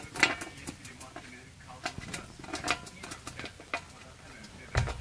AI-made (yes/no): no